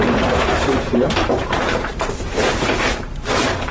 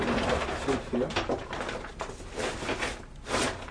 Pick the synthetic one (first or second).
first